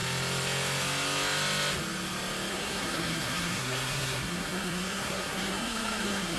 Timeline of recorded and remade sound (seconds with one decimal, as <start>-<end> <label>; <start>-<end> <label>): 0.0-2.5 recorded; 2.5-6.4 remade